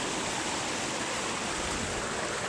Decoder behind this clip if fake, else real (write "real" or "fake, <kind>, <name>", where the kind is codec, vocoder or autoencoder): real